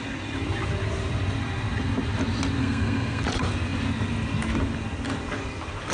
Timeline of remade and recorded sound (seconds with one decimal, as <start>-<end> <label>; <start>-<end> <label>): 0.0-2.6 recorded; 2.6-3.2 remade; 3.2-5.9 recorded